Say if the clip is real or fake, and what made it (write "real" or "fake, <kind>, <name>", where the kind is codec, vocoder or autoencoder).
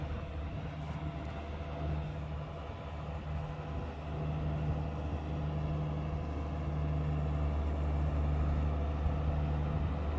real